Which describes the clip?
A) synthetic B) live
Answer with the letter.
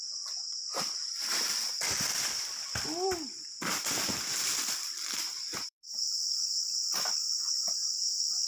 A